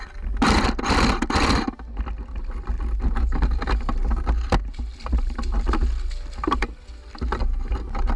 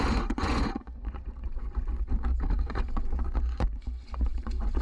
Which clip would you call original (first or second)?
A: first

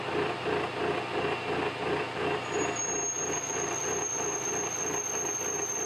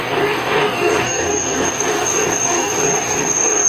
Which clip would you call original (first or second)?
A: first